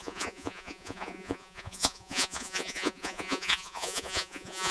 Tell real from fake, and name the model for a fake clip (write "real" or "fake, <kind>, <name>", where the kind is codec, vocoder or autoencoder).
fake, vocoder, Vocos